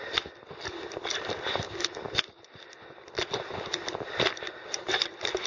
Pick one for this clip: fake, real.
real